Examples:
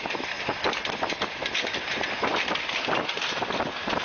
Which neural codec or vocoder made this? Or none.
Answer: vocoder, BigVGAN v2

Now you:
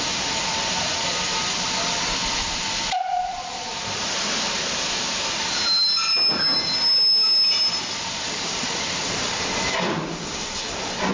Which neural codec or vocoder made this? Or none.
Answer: none